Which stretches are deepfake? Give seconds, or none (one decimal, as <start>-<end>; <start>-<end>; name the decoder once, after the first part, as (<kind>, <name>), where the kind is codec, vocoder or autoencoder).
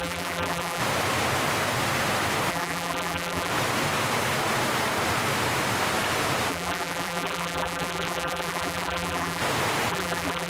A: 0.0-0.8 (vocoder, BigVGAN v2); 2.5-3.5; 6.5-9.4; 9.9-10.5